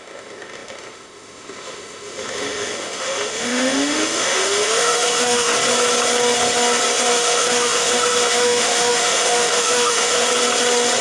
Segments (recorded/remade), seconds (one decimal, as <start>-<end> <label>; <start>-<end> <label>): 0.0-5.5 remade; 5.5-7.1 recorded; 7.1-10.2 remade; 10.2-11.0 recorded